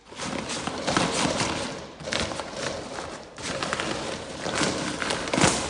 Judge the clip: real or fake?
real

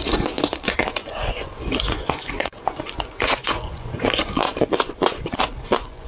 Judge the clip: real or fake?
fake